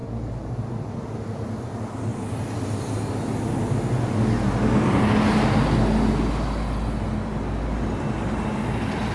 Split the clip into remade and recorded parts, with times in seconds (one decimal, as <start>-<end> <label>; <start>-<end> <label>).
0.0-0.9 remade; 0.9-9.1 recorded